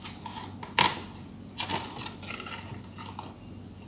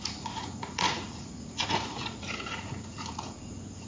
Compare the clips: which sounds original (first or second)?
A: first